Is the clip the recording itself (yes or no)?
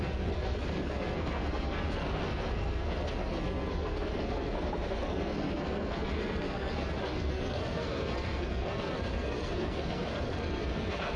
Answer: no